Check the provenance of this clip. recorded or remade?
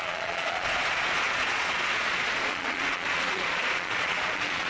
remade